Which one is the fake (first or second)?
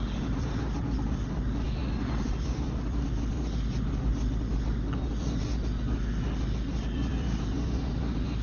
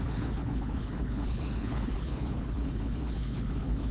second